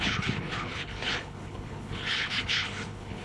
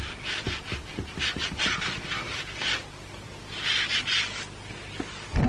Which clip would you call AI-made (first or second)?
first